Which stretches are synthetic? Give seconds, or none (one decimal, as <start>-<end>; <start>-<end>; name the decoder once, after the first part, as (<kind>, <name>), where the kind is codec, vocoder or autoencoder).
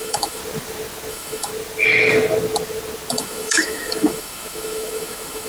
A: 0.0-0.4 (autoencoder, DAC-VAE); 1.1-1.5; 3.1-5.5